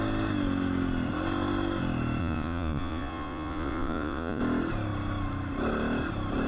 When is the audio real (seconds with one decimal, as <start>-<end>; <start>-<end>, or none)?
0.0-2.2; 4.4-6.5